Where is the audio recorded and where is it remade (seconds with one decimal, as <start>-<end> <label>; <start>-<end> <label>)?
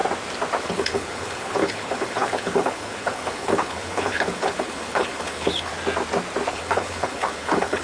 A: 0.0-0.6 recorded; 0.6-5.7 remade; 5.7-6.5 recorded; 6.5-7.8 remade